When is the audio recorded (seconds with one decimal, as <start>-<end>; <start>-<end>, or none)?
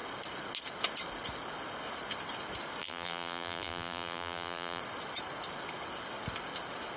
0.0-2.8; 4.8-7.0